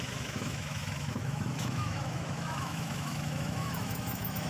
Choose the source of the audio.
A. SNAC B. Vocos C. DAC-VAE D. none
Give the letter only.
C